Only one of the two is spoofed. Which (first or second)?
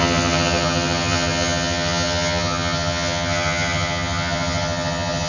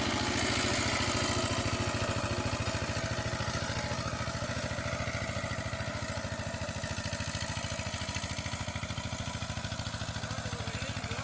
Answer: first